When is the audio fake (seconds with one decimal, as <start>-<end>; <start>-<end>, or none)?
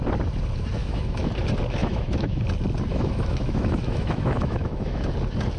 0.8-1.3; 1.8-2.4; 2.9-5.0